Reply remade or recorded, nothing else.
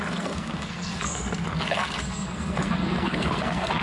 remade